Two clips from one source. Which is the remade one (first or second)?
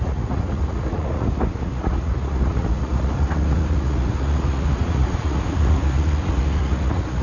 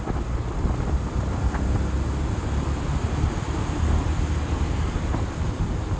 first